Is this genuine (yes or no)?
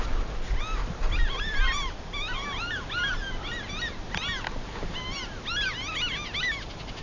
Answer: yes